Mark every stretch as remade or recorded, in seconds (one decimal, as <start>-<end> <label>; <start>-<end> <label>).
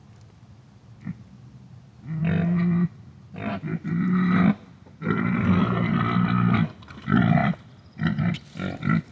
0.0-9.1 recorded